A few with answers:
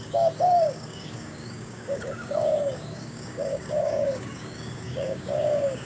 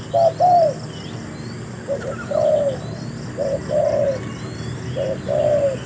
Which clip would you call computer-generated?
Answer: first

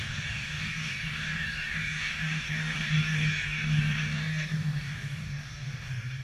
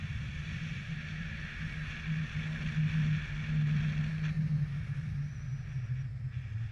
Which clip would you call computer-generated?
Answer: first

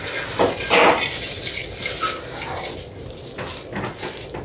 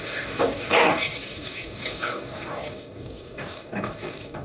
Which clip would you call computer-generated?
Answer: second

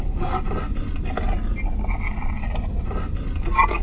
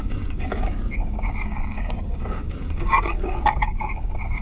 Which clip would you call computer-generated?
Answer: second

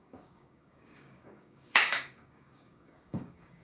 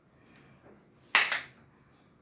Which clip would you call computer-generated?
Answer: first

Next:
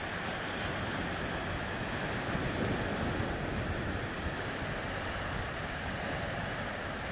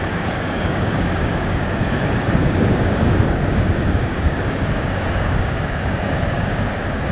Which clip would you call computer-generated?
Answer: second